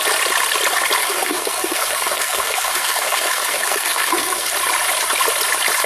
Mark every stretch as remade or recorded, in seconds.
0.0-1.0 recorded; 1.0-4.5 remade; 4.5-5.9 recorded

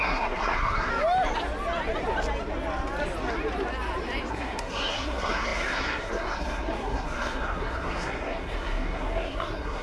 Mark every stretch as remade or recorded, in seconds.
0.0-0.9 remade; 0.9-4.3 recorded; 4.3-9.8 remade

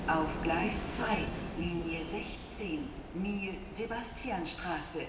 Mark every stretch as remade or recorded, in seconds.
0.0-0.6 recorded; 0.6-1.8 remade; 1.8-5.1 recorded